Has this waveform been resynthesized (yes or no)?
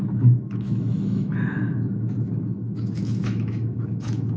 yes